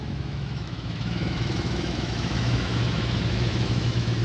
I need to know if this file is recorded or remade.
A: remade